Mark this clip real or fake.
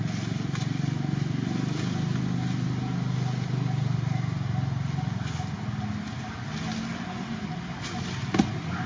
real